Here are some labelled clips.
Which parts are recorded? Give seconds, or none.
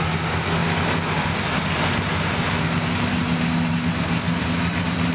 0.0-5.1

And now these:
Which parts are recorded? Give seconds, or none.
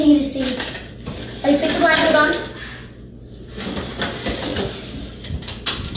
0.0-6.0